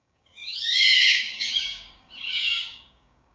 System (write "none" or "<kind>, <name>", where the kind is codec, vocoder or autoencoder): codec, DAC